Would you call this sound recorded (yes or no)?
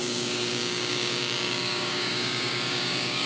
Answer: no